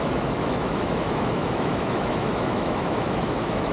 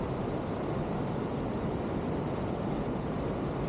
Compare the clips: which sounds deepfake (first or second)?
first